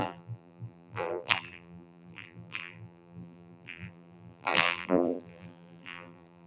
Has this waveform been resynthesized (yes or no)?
yes